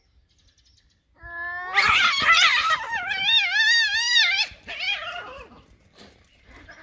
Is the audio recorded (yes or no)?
yes